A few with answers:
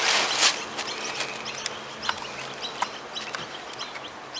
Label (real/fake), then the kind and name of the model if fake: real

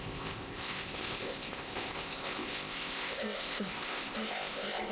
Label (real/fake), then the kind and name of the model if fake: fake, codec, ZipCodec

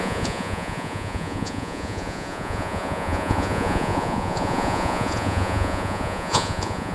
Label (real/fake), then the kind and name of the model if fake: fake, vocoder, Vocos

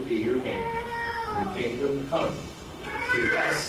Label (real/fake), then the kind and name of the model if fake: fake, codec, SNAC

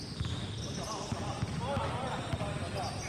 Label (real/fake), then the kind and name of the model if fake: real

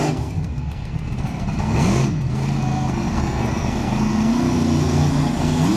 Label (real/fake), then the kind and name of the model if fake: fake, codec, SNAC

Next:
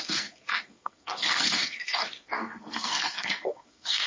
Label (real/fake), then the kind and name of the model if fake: fake, codec, SNAC